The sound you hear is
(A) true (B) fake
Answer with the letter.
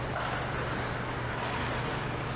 A